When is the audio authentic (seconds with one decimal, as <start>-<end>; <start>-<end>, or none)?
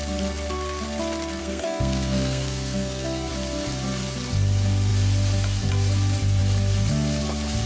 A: 0.0-1.4; 3.3-7.7